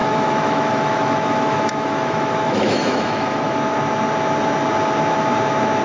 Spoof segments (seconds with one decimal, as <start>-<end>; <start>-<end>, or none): 0.0-3.5